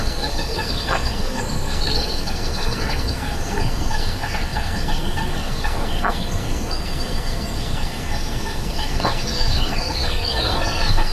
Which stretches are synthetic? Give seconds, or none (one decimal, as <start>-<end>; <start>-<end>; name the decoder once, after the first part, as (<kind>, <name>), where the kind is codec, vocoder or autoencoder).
0.0-11.1 (codec, SNAC)